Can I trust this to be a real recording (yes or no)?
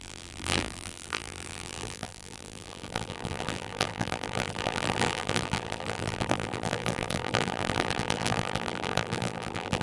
no